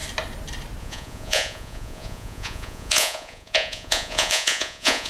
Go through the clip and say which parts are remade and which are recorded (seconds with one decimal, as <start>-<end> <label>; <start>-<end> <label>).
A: 0.0-0.8 recorded; 0.8-5.1 remade